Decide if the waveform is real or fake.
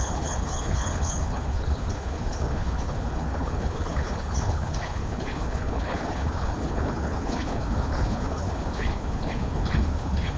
fake